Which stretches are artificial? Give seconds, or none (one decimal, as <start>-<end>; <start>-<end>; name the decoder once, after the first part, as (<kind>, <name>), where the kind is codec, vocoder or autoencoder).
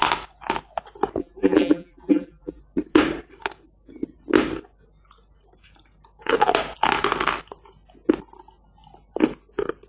1.2-2.6 (vocoder, BigVGAN v2)